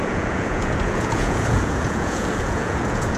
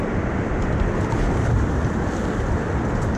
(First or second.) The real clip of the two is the second